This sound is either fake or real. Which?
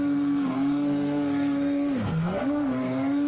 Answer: fake